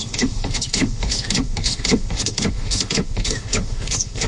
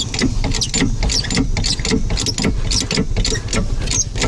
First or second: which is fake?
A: first